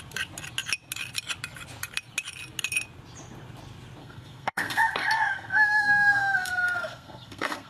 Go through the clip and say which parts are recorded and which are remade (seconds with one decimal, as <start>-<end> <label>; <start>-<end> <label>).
0.0-4.0 recorded; 4.0-7.7 remade